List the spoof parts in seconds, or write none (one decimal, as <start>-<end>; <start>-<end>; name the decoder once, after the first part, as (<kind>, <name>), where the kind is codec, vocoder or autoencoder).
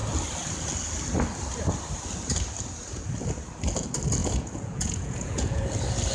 4.2-5.6 (vocoder, Vocos)